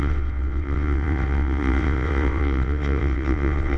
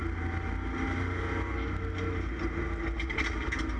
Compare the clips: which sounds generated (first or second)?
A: first